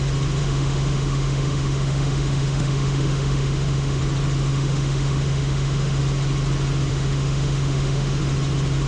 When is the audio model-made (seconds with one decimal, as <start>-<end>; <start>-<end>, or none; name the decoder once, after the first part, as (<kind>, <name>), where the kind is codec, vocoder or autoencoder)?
0.4-4.0 (autoencoder, DAC-VAE); 4.5-6.0; 6.9-8.2